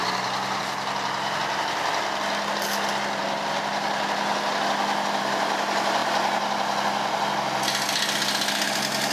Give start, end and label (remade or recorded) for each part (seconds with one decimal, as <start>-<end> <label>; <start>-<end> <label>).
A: 0.0-9.1 recorded